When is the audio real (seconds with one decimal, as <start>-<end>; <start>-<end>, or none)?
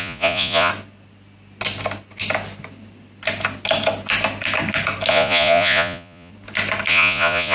0.7-5.1; 6.3-6.9